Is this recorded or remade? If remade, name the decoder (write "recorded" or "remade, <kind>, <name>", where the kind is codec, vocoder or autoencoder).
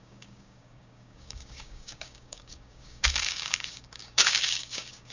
remade, codec, DAC